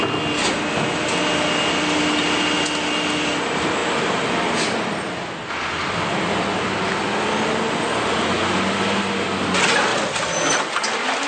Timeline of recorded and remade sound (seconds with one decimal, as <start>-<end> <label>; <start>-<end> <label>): 0.0-11.3 recorded